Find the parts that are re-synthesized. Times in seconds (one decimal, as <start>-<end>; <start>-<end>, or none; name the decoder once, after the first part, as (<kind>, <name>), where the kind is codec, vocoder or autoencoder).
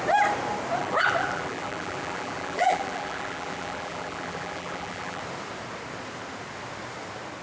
0.8-5.2 (vocoder, BigVGAN v2)